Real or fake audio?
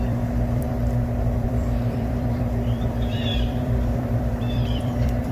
fake